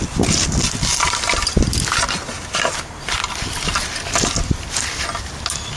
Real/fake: real